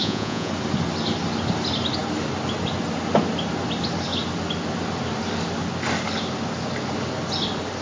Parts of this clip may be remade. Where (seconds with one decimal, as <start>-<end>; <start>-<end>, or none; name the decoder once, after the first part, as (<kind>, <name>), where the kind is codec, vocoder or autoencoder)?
0.0-0.5 (vocoder, Vocos)